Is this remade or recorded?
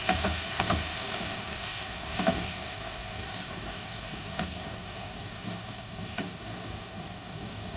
remade